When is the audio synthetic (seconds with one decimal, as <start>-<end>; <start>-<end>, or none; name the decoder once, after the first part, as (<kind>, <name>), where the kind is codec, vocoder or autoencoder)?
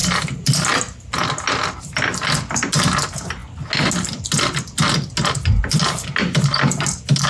none